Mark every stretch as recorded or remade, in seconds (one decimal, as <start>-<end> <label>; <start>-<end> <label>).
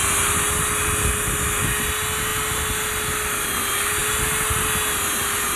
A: 0.0-5.6 recorded